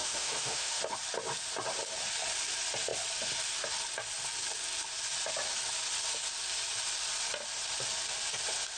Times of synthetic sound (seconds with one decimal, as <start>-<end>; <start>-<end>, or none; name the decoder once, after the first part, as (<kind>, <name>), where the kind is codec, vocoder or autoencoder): 0.0-0.8 (autoencoder, DAC-VAE)